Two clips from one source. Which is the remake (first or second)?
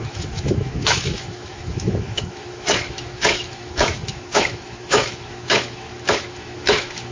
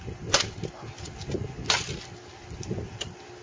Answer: first